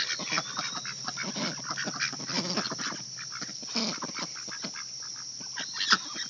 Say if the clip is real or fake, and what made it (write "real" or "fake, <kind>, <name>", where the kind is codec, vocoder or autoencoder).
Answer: real